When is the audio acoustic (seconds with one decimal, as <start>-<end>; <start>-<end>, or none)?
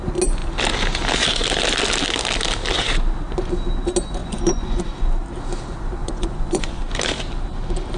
0.0-4.2; 4.8-6.0; 6.8-8.0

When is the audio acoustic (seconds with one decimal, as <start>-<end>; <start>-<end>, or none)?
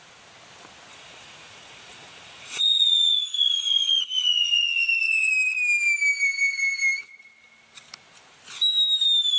0.0-0.9; 5.3-9.4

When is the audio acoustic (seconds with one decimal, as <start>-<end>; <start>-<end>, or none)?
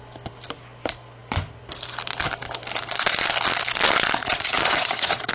0.0-4.2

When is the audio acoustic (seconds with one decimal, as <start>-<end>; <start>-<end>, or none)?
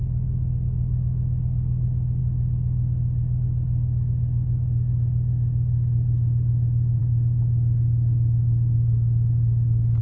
0.0-10.0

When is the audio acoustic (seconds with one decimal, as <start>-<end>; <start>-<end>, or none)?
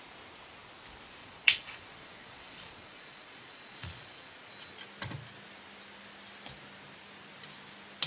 0.0-1.2; 4.5-8.1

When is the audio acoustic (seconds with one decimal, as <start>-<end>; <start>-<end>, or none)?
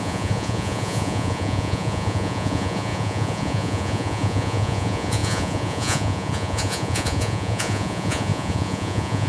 none